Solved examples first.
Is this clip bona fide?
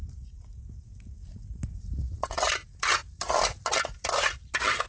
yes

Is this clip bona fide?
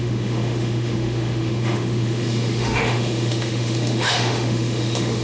no